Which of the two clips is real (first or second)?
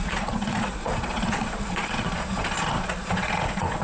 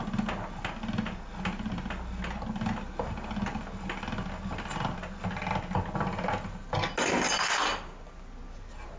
second